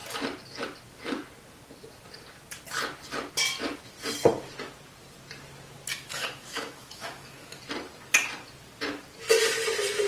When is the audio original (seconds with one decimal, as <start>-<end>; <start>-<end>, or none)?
0.0-5.9; 7.6-10.1